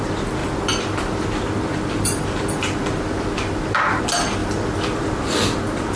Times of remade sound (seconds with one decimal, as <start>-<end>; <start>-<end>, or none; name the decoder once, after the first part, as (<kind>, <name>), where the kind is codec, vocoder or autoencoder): 0.4-4.0 (vocoder, BigVGAN v2); 4.4-5.4